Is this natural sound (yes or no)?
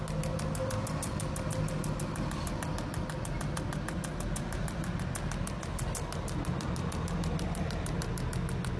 yes